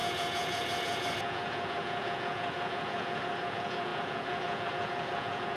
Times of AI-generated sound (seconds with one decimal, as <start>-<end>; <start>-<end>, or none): 0.0-5.6